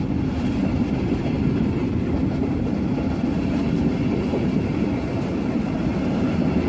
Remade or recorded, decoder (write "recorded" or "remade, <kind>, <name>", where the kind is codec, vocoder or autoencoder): recorded